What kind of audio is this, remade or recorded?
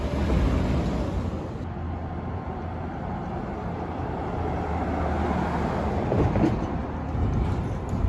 recorded